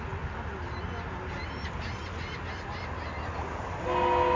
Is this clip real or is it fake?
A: real